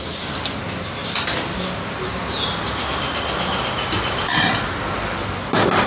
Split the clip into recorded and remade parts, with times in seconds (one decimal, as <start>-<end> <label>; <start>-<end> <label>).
0.0-5.9 recorded